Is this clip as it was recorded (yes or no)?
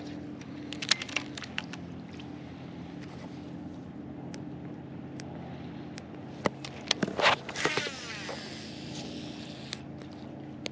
yes